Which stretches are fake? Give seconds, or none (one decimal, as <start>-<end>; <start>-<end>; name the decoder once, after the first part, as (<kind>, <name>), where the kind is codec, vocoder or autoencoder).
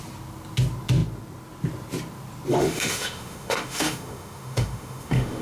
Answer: 2.5-5.4 (autoencoder, DAC-VAE)